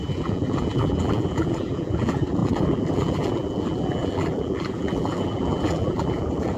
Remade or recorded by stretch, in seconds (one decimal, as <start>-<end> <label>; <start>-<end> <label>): 0.0-6.6 remade